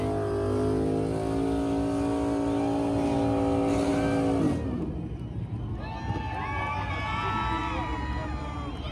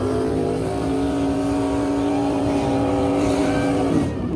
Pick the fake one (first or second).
second